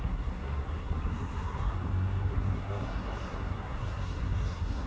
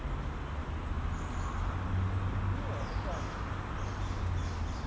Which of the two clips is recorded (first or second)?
second